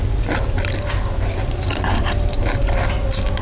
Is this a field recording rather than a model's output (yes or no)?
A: yes